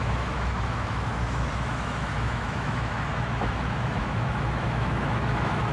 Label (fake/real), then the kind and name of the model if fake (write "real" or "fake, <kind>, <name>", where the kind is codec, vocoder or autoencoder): fake, autoencoder, DAC-VAE